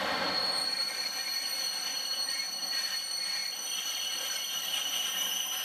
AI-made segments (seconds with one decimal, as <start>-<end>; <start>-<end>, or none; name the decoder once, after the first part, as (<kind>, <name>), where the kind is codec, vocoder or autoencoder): 0.0-3.4 (vocoder, BigVGAN v2); 4.2-5.6